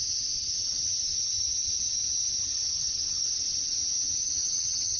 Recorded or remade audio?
remade